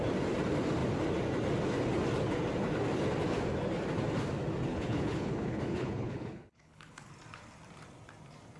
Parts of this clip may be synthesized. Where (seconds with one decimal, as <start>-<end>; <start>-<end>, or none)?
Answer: 4.7-7.1